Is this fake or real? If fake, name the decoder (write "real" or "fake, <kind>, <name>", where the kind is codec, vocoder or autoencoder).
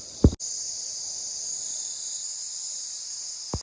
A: real